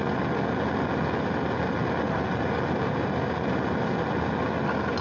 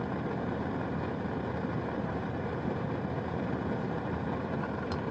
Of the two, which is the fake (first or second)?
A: second